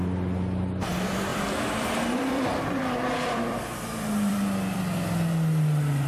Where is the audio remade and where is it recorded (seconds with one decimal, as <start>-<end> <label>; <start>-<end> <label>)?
0.0-1.3 recorded; 1.3-4.8 remade; 4.8-6.1 recorded